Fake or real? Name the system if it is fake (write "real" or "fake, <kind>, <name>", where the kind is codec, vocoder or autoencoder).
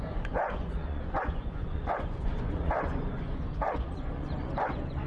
fake, vocoder, Vocos